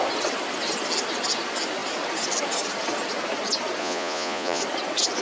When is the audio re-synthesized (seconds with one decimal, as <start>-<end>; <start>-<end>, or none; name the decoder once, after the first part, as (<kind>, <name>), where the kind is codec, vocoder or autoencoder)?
3.8-4.6 (vocoder, Vocos)